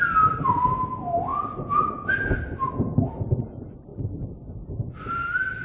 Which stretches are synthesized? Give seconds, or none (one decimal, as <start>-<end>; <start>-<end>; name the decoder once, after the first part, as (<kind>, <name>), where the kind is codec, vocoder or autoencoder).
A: none